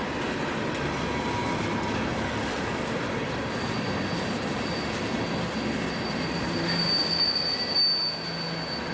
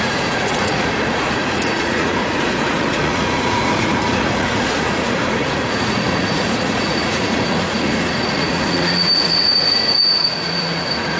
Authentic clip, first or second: first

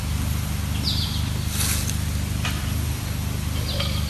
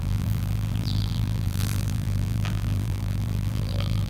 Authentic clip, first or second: first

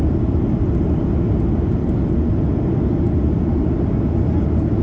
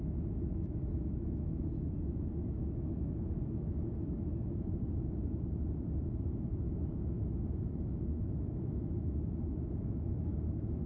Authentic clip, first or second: first